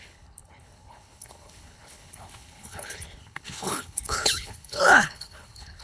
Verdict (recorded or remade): remade